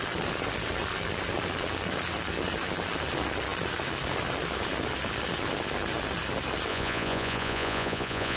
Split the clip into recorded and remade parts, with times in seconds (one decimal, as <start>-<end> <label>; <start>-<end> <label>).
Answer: 0.0-6.7 recorded; 6.7-8.4 remade